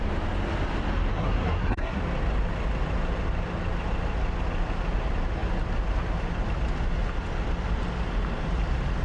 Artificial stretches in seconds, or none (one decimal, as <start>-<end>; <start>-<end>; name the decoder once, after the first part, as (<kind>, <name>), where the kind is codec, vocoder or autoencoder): 1.1-2.0 (codec, SNAC)